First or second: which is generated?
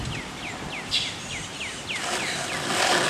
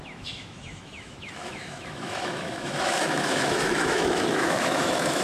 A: second